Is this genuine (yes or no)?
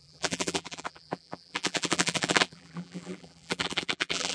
no